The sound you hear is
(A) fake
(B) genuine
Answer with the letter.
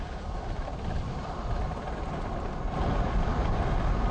B